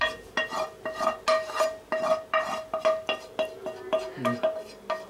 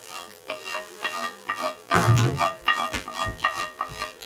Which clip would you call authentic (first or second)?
first